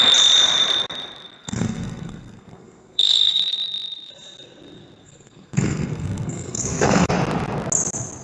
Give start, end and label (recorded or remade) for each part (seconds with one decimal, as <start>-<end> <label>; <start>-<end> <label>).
0.0-1.4 recorded; 1.4-3.4 remade; 3.4-5.0 recorded; 5.0-7.1 remade; 7.1-8.2 recorded